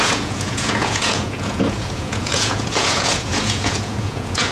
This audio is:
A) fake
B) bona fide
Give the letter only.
A